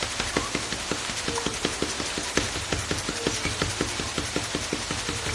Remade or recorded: recorded